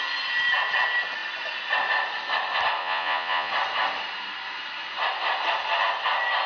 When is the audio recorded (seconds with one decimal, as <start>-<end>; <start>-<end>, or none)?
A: 0.0-2.8; 3.5-6.5